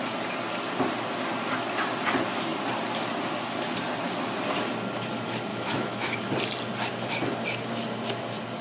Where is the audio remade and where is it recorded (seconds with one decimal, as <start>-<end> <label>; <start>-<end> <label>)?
0.0-5.5 recorded; 5.5-6.2 remade; 6.2-8.6 recorded

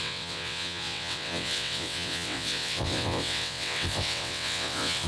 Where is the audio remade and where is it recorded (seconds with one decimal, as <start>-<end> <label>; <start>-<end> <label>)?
0.0-5.1 remade

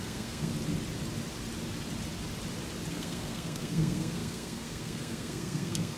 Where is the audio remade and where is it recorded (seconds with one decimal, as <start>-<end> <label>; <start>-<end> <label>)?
0.0-0.5 remade; 0.5-2.9 recorded; 2.9-6.0 remade

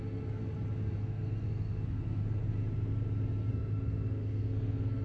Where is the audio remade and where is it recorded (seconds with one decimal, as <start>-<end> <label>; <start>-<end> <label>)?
0.0-0.4 remade; 0.4-1.0 recorded; 1.0-2.2 remade; 2.2-3.5 recorded; 3.5-5.0 remade

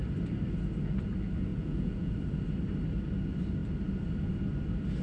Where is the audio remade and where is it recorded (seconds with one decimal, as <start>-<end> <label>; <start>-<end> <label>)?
0.0-1.5 recorded; 1.5-2.1 remade; 2.1-5.0 recorded

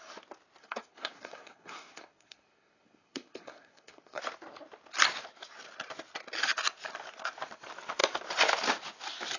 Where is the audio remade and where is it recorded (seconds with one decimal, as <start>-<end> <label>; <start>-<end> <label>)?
0.0-0.6 recorded; 0.6-4.2 remade; 4.2-9.4 recorded

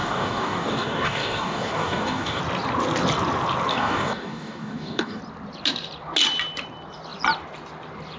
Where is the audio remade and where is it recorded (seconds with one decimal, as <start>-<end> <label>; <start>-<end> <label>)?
0.0-2.4 remade; 2.4-3.7 recorded; 3.7-5.2 remade; 5.2-8.2 recorded

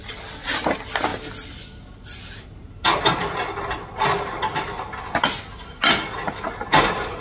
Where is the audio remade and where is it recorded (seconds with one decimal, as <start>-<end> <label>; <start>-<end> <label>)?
0.0-7.2 recorded